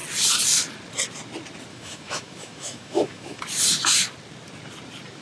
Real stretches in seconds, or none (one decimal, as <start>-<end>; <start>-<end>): 0.0-1.7; 3.4-5.2